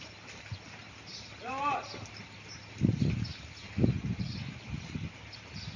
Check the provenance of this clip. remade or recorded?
recorded